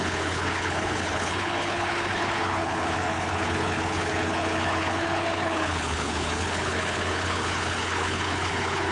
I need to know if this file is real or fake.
fake